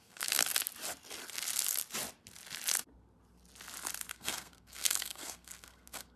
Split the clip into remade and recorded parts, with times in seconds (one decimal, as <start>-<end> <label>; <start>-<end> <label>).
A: 0.0-0.4 remade; 0.4-4.1 recorded; 4.1-6.2 remade